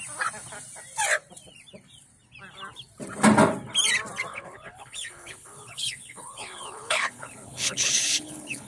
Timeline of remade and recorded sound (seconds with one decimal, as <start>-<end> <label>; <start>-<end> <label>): 0.0-4.3 recorded; 4.3-8.7 remade

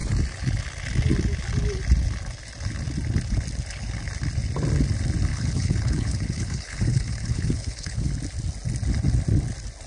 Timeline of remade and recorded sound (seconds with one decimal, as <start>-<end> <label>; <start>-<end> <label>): 0.0-5.3 recorded; 5.3-8.1 remade; 8.1-9.9 recorded

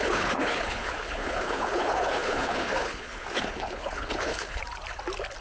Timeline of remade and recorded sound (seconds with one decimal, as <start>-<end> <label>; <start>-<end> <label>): 0.0-4.6 remade; 4.6-5.4 recorded

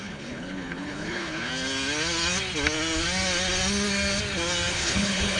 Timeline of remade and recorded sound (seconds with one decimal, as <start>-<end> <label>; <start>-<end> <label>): 0.0-1.5 remade; 1.5-4.7 recorded; 4.7-5.4 remade

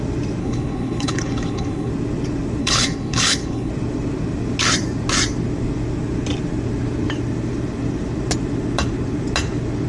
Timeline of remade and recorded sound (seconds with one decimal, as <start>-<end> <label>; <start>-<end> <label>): 0.0-0.4 recorded; 0.4-1.9 remade; 1.9-2.6 recorded; 2.6-3.7 remade; 3.7-9.9 recorded

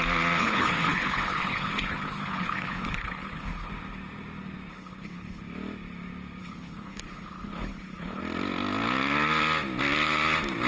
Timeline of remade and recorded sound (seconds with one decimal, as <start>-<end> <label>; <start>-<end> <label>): 0.0-0.4 recorded; 0.4-3.7 remade; 3.7-4.7 recorded; 4.7-5.4 remade; 5.4-6.4 recorded; 6.4-8.2 remade; 8.2-10.7 recorded